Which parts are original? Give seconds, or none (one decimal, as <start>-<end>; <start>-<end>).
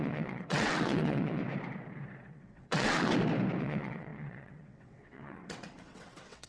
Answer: 1.4-2.3; 3.1-3.6